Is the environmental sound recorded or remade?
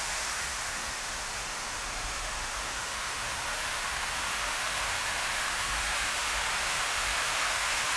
remade